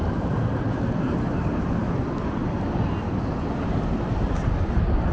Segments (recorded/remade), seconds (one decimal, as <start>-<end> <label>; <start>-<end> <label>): 0.0-5.1 recorded